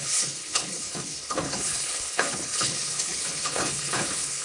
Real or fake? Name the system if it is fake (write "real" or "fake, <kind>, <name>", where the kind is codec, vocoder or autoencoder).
fake, codec, HILCodec